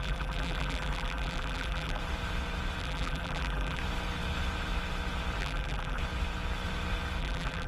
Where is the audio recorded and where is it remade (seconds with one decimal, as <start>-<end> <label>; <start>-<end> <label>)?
0.0-2.0 remade; 2.0-2.8 recorded; 2.8-3.8 remade; 3.8-5.4 recorded; 5.4-6.0 remade; 6.0-7.2 recorded; 7.2-7.7 remade